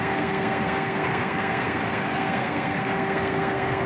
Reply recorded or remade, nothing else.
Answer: remade